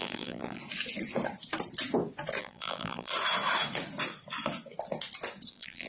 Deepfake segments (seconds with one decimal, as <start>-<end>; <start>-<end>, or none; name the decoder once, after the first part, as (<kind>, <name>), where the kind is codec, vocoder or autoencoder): 0.0-0.6 (vocoder, BigVGAN v2); 2.4-3.1; 5.5-5.9